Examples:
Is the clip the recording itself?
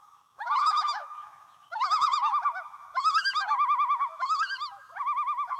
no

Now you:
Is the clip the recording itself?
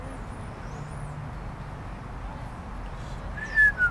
yes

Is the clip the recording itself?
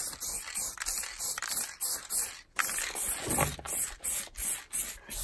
yes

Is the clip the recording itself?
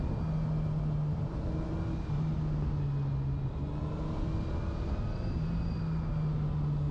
yes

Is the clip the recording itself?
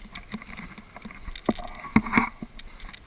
yes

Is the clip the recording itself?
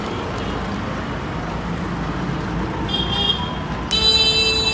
yes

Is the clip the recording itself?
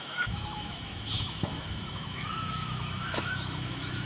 no